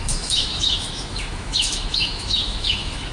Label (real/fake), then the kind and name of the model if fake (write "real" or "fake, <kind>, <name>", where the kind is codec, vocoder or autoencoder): fake, autoencoder, DAC-VAE